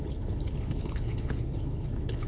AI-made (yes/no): yes